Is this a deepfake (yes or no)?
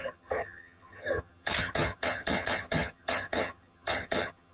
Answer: yes